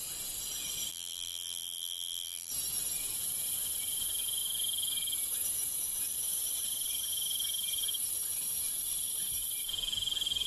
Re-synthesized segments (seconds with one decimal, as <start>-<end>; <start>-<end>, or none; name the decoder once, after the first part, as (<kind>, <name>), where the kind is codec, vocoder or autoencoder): 0.9-2.5 (vocoder, BigVGAN v2)